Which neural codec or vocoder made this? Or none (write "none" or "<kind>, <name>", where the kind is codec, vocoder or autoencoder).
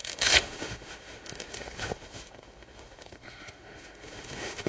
autoencoder, DAC-VAE